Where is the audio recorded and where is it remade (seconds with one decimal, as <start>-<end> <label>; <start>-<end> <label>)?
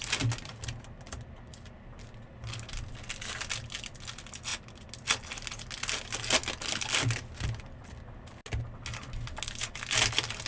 0.0-10.5 recorded